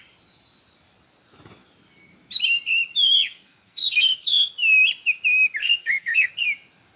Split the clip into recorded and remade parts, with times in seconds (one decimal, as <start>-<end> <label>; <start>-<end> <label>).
0.0-3.3 recorded; 3.3-4.5 remade; 4.5-5.6 recorded; 5.6-6.3 remade; 6.3-7.0 recorded